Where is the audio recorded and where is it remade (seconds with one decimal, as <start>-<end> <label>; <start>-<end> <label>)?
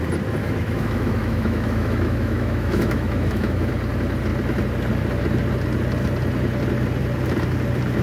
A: 0.0-0.4 recorded; 0.4-3.7 remade; 3.7-8.0 recorded